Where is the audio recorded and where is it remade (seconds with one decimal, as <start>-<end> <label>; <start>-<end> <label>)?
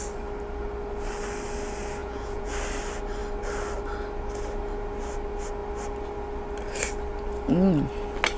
0.0-2.0 recorded; 2.0-2.5 remade; 2.5-8.4 recorded